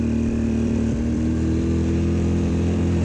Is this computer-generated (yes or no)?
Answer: yes